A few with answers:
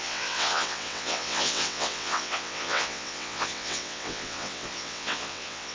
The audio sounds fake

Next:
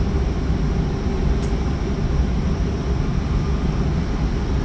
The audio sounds real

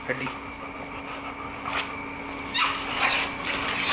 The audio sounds real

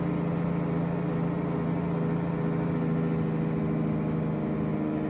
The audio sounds real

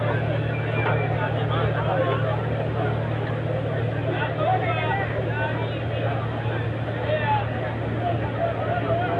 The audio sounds real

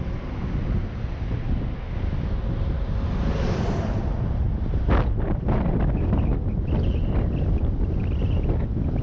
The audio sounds real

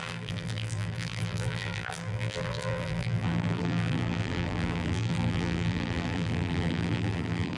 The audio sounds fake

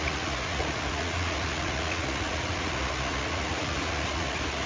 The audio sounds fake